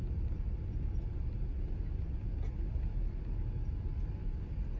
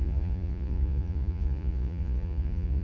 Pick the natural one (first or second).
first